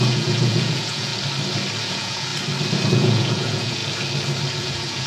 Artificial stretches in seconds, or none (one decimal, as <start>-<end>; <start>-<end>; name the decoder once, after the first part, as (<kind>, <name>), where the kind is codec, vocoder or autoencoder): 0.0-1.1 (vocoder, Vocos); 1.9-2.3; 2.9-3.8; 4.6-5.1